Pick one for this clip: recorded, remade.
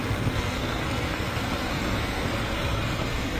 remade